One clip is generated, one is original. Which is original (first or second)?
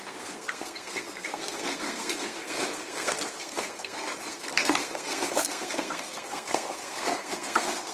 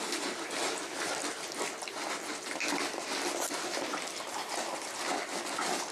second